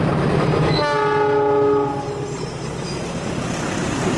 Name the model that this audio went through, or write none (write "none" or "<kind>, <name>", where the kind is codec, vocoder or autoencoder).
none